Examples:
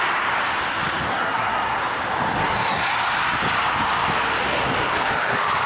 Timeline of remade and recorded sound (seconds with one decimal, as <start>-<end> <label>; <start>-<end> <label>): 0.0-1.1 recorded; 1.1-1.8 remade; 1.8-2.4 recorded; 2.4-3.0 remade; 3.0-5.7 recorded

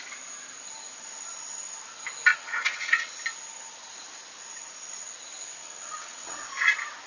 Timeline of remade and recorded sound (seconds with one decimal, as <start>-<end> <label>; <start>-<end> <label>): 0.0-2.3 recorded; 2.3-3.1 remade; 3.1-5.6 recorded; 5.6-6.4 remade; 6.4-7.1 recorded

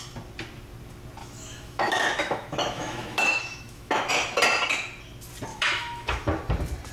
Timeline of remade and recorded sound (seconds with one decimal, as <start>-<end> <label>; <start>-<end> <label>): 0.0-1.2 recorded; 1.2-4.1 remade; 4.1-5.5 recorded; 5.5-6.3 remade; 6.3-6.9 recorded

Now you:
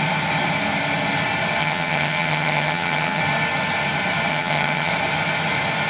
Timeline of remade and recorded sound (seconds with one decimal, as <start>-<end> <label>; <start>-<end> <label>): 0.0-1.6 recorded; 1.6-3.2 remade; 3.2-4.3 recorded; 4.3-4.9 remade; 4.9-5.9 recorded

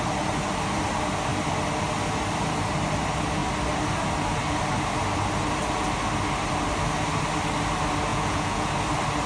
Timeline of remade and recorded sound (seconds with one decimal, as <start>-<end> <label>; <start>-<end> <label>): 0.0-8.1 recorded; 8.1-8.7 remade; 8.7-9.3 recorded